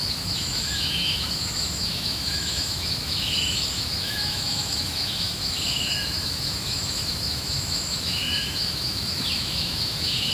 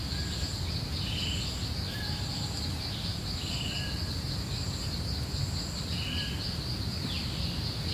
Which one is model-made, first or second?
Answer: first